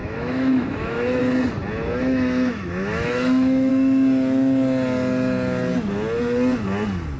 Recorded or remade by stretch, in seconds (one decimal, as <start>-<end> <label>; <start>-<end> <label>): 0.0-1.2 remade; 1.2-2.0 recorded; 2.0-3.7 remade; 3.7-7.2 recorded